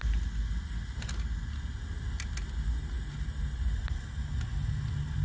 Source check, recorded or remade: recorded